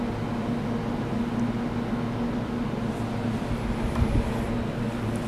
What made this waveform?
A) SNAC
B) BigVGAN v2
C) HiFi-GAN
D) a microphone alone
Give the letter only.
D